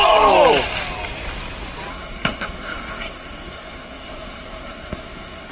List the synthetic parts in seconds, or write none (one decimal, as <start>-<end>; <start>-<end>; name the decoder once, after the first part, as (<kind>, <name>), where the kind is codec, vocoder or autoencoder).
1.9-5.5 (codec, SNAC)